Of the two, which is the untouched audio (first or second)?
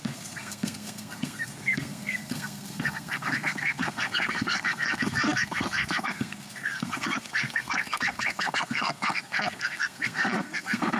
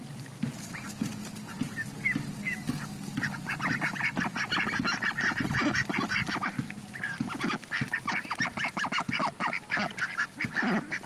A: second